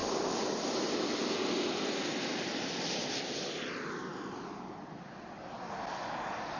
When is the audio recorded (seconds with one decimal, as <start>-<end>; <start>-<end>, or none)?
0.0-6.6